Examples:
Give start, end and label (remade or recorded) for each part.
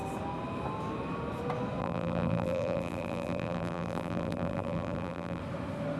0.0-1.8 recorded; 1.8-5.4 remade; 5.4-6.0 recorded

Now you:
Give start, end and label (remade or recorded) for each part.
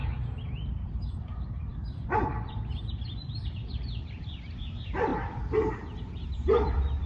0.0-7.1 remade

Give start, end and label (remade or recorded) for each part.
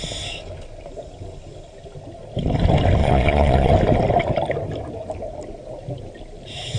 0.0-3.0 recorded; 3.0-3.7 remade; 3.7-6.8 recorded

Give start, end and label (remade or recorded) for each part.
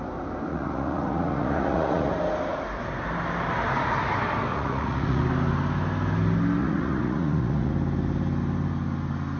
0.0-0.5 recorded; 0.5-2.1 remade; 2.1-4.5 recorded; 4.5-5.2 remade; 5.2-6.6 recorded; 6.6-7.7 remade; 7.7-9.4 recorded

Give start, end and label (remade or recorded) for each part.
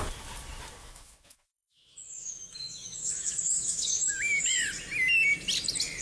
0.0-0.8 recorded; 0.8-4.4 remade; 4.4-6.0 recorded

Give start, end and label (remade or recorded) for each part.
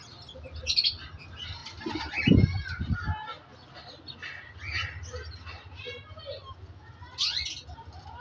0.0-8.2 recorded